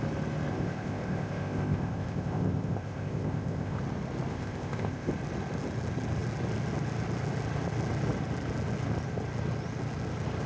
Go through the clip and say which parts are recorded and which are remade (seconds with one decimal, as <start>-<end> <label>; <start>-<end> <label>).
0.0-0.5 recorded; 0.5-3.8 remade; 3.8-4.3 recorded; 4.3-5.1 remade; 5.1-10.5 recorded